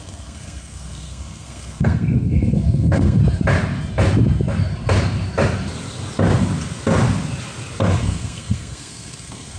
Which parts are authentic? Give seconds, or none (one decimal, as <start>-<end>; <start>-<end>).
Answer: 3.2-7.8